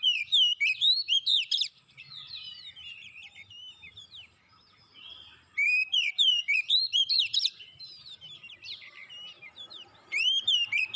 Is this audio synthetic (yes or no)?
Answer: yes